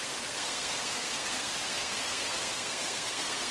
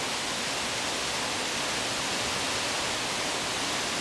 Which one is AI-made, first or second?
first